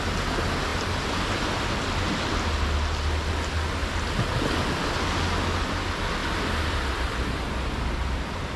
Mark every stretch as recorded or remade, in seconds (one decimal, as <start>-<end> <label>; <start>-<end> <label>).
0.0-8.6 recorded